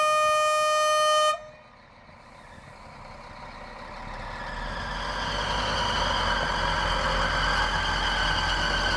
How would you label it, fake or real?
real